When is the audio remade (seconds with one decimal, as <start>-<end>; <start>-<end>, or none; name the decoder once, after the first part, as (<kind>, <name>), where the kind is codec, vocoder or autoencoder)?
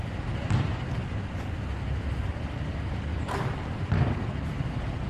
3.1-4.1 (vocoder, BigVGAN v2)